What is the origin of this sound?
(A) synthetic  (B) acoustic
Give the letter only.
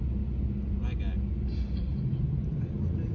B